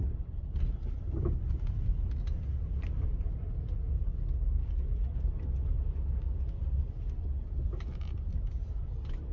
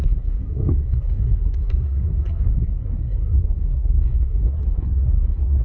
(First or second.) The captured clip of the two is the first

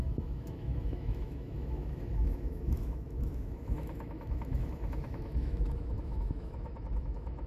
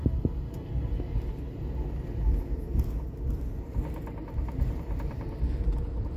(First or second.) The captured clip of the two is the second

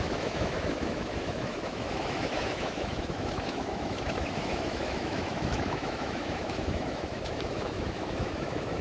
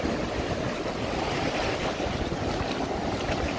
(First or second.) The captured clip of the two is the second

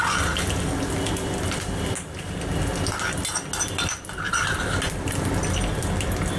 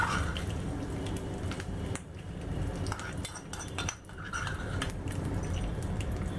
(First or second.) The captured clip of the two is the first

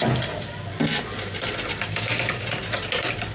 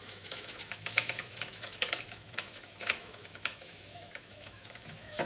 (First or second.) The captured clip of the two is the first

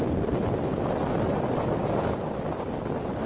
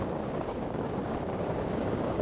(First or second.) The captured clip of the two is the first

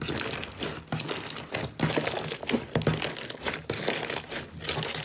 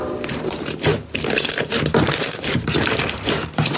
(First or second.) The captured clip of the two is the first